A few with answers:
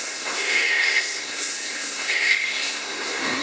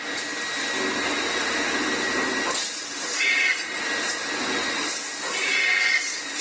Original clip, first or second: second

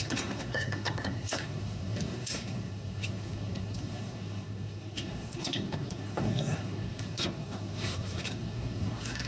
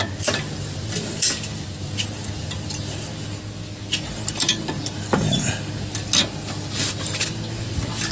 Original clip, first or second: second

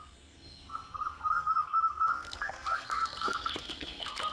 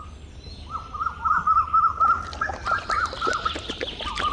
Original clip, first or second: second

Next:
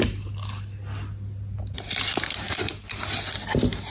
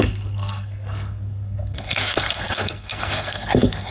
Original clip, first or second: first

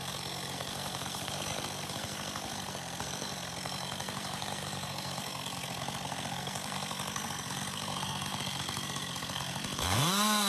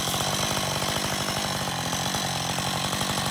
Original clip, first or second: second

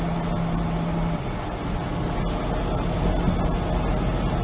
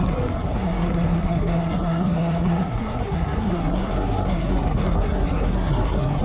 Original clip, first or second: first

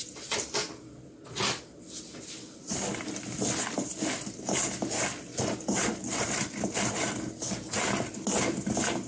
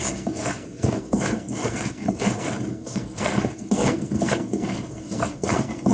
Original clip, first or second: first